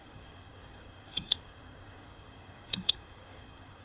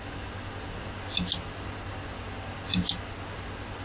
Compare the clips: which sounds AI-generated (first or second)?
first